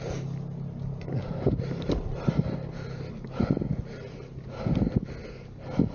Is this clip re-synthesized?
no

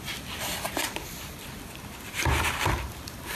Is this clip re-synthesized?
yes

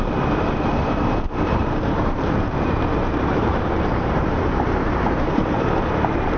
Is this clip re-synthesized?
yes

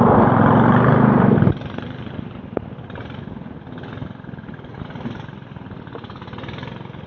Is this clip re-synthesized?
no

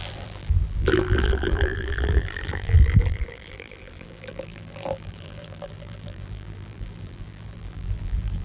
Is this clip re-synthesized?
yes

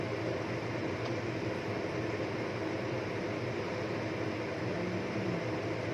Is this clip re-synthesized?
no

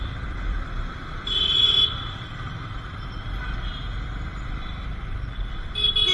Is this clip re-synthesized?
yes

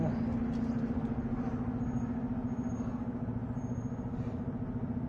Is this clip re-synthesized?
no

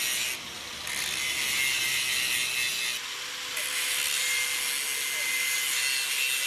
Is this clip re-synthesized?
no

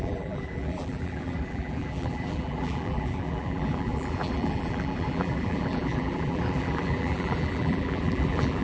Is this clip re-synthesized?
yes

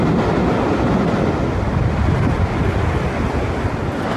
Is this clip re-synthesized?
no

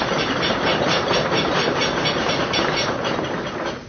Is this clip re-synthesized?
yes